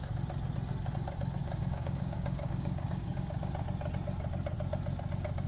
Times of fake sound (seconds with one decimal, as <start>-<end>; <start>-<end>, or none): 1.4-3.5